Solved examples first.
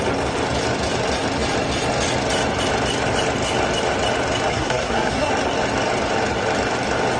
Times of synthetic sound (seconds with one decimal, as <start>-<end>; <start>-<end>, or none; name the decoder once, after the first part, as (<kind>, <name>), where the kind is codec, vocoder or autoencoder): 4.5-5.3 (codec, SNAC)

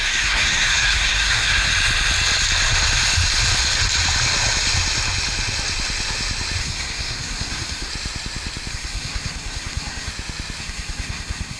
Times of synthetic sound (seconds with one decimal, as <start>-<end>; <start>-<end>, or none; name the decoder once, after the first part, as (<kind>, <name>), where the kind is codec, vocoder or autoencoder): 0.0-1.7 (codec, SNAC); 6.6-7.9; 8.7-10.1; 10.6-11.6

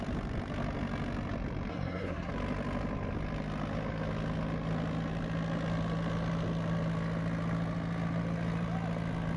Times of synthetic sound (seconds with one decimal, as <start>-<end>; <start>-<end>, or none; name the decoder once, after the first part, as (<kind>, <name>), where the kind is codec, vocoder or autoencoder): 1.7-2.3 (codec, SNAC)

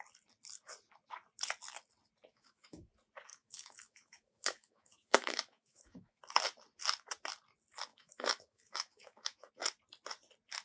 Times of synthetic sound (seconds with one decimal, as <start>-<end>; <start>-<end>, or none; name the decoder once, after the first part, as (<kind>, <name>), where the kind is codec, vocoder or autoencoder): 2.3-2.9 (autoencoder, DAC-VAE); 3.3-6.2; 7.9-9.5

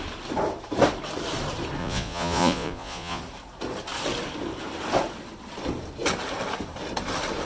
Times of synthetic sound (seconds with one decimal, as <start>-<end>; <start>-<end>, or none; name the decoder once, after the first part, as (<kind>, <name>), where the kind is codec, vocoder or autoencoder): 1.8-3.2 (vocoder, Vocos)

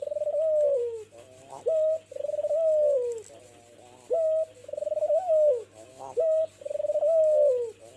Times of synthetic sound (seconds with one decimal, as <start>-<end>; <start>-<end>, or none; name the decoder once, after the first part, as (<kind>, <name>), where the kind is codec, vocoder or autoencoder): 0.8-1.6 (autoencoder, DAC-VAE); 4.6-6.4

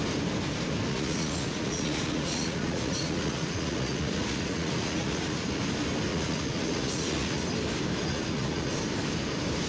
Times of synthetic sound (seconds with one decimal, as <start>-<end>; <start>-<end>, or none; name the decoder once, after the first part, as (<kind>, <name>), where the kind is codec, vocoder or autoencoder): 0.9-5.6 (vocoder, Vocos); 6.1-7.4; 8.1-8.7

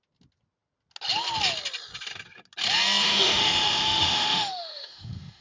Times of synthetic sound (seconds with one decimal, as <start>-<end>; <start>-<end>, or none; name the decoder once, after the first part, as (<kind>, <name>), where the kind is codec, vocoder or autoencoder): 3.0-5.4 (autoencoder, DAC-VAE)